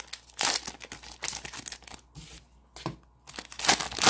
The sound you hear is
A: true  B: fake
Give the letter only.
A